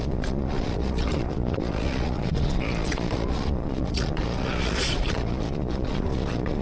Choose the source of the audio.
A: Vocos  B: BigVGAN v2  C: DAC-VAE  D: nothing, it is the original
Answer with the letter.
A